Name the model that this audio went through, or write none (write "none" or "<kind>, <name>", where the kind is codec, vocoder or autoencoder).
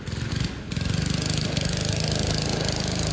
none